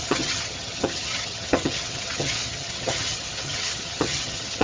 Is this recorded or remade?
remade